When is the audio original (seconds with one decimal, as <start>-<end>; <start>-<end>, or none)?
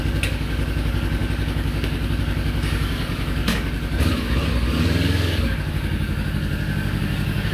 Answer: none